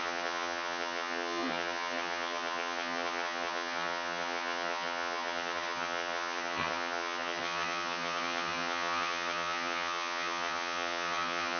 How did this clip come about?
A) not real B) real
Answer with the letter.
A